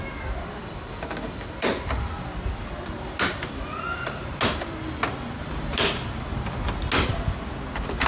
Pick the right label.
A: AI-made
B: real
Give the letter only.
B